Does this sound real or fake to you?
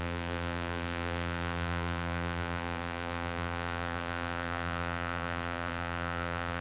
fake